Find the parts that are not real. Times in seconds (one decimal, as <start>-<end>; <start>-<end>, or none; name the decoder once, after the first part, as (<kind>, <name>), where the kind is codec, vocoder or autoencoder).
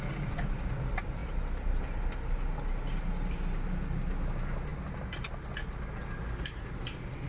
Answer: none